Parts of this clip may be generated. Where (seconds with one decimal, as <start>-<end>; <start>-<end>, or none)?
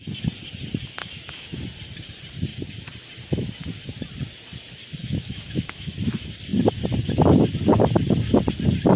1.0-1.6; 5.0-5.9